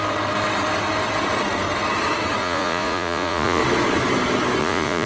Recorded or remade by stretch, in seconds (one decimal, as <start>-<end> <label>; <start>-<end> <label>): 0.0-2.4 recorded; 2.4-3.6 remade; 3.6-4.6 recorded; 4.6-5.1 remade